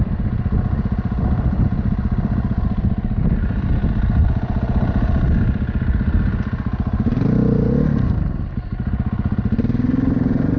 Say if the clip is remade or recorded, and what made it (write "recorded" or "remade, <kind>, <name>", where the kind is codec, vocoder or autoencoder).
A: recorded